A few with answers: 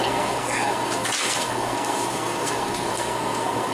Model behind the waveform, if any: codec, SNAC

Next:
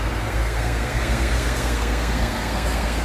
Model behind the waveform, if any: codec, SNAC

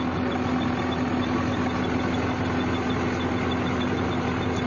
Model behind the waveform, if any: none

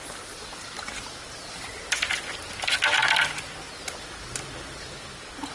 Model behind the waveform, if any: none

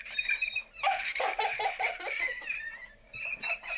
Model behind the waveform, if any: vocoder, BigVGAN v2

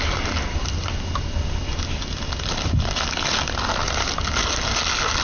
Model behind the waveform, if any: none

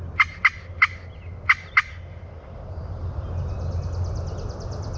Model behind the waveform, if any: none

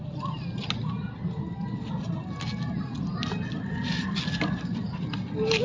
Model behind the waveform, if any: none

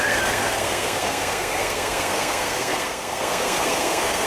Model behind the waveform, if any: codec, SNAC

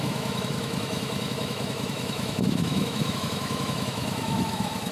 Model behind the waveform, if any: autoencoder, DAC-VAE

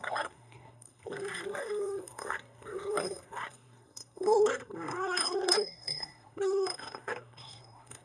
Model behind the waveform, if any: codec, SNAC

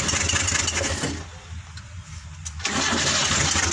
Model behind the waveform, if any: none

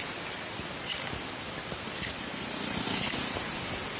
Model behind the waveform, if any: none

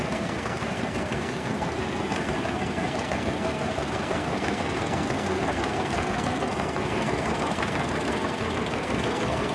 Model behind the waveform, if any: codec, SNAC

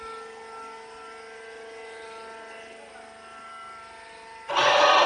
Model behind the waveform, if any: none